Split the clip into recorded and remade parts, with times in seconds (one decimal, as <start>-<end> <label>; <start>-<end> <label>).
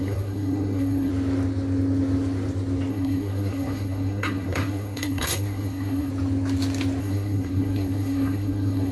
0.0-1.1 remade; 1.1-2.9 recorded; 2.9-6.1 remade; 6.1-7.0 recorded; 7.0-8.9 remade